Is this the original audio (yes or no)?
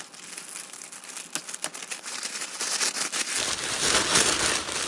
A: yes